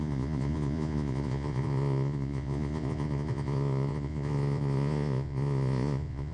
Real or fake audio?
fake